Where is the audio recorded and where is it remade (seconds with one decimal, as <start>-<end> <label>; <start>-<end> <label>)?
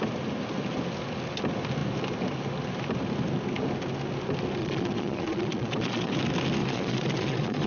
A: 0.0-4.6 recorded; 4.6-6.1 remade; 6.1-6.6 recorded; 6.6-7.7 remade